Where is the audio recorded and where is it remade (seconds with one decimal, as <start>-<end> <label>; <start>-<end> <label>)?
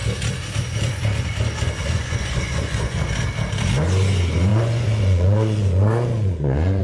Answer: 0.0-1.8 recorded; 1.8-3.0 remade; 3.0-4.5 recorded; 4.5-6.8 remade